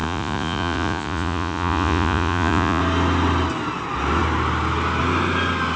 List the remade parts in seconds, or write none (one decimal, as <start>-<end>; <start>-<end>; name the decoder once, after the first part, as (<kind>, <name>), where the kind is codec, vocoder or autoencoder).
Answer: 0.0-2.8 (vocoder, Vocos)